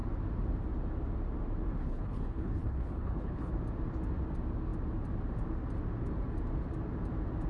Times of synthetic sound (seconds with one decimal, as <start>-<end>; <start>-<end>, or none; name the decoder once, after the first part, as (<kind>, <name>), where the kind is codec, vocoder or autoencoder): 1.8-3.5 (codec, HILCodec)